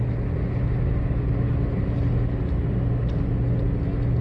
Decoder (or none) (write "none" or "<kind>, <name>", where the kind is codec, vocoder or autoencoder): none